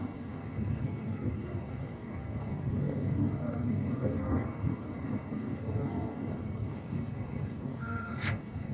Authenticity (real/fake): fake